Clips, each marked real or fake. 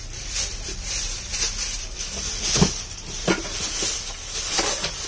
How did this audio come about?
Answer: fake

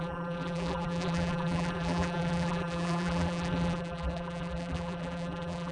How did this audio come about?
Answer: fake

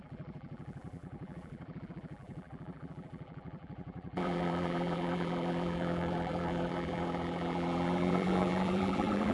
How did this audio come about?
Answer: fake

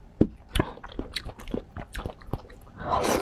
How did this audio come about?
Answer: fake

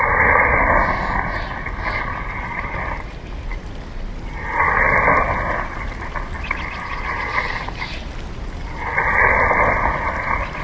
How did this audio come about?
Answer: fake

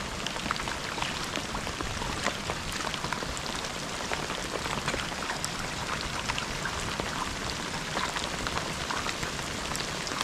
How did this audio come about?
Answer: fake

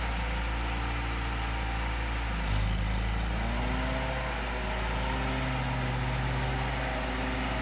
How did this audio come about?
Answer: real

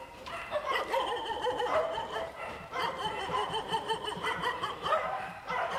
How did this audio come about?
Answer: fake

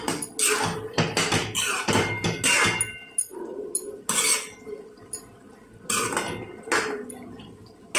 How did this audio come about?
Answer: real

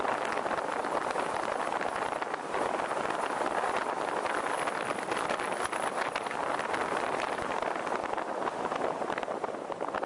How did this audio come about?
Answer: real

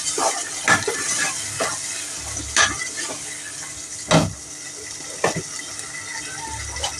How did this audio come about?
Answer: real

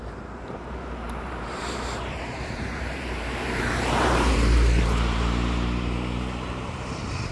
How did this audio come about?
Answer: fake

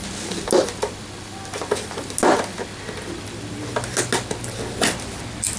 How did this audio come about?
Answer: real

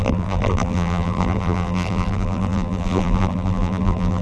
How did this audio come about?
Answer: fake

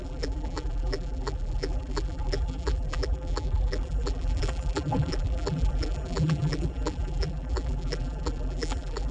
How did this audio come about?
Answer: fake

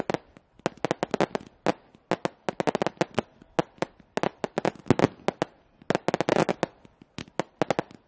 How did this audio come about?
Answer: real